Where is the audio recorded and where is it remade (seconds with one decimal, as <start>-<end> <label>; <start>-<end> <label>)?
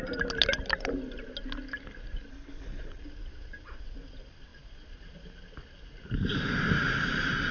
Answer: 0.0-2.3 recorded; 2.3-3.0 remade; 3.0-7.5 recorded